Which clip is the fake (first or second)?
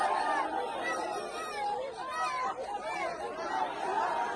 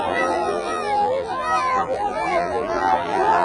second